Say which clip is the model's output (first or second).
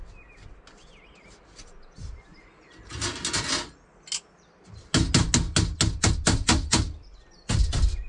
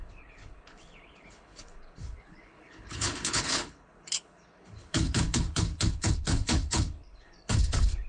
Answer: second